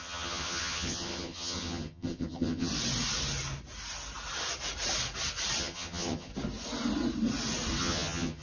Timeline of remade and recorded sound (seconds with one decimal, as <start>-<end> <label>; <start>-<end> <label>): 0.0-2.7 remade; 2.7-5.6 recorded; 5.6-6.3 remade; 6.3-7.8 recorded; 7.8-8.4 remade